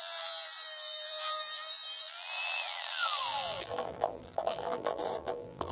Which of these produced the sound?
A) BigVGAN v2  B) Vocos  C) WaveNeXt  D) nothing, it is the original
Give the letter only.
A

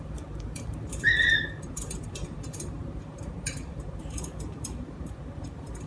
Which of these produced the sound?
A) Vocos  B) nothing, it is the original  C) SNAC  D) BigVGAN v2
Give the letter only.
D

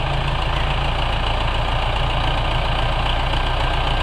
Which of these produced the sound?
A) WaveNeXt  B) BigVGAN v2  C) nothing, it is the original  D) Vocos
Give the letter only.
C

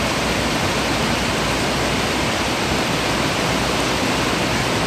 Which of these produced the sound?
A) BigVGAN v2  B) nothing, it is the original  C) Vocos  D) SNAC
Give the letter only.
B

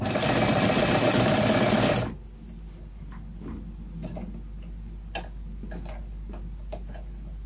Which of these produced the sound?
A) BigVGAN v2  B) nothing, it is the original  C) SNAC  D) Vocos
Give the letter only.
B